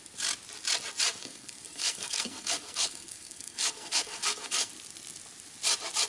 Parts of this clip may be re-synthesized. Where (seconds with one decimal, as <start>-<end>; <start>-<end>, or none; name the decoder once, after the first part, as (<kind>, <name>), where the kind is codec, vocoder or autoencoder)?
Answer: 1.2-4.7 (codec, SNAC)